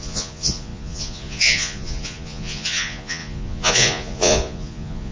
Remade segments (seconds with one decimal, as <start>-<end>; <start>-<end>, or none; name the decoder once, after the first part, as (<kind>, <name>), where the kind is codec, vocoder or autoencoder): 0.0-5.1 (vocoder, Vocos)